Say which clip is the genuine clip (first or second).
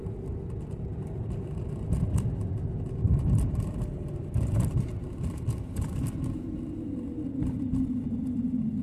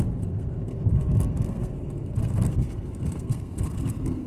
first